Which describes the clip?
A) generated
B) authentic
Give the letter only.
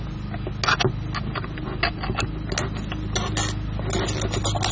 B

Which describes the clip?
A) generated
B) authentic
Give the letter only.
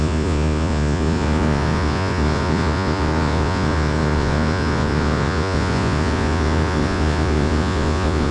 A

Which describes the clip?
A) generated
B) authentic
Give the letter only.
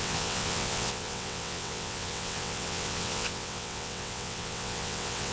A